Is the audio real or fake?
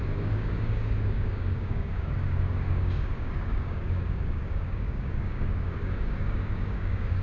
fake